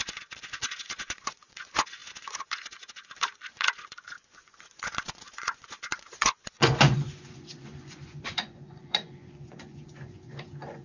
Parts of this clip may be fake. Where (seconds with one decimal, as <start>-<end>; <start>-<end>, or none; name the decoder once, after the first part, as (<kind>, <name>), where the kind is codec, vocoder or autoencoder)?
0.0-10.8 (vocoder, Vocos)